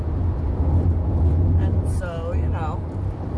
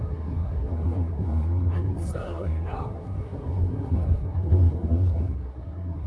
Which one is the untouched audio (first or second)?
first